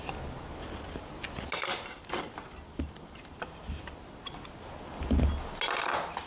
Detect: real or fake real